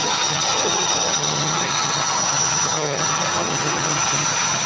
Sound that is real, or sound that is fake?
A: fake